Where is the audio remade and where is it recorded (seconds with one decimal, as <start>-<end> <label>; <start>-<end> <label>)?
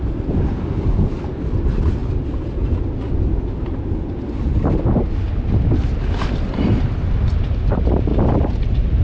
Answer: 0.0-9.0 recorded